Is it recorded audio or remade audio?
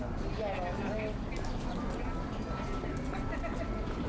recorded